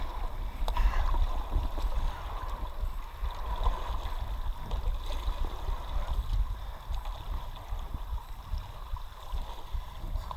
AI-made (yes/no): no